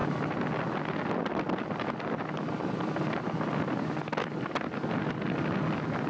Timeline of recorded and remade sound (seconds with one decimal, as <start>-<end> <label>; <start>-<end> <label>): 0.0-6.1 recorded